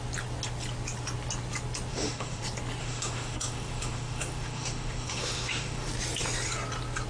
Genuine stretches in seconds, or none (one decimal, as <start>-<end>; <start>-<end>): 0.0-1.9; 2.4-2.8; 5.9-7.1